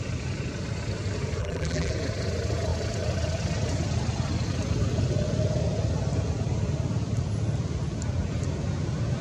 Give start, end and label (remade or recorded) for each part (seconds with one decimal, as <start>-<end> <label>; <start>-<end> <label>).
0.0-1.4 recorded; 1.4-1.9 remade; 1.9-9.2 recorded